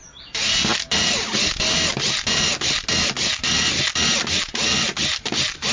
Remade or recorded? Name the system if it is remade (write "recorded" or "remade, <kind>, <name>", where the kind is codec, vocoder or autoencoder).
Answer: recorded